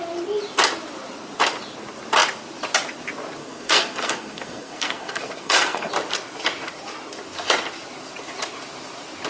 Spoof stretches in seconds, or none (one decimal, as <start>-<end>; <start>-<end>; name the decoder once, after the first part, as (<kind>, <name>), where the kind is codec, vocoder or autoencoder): 3.4-5.9 (codec, SNAC)